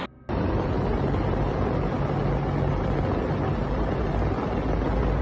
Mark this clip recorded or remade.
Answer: recorded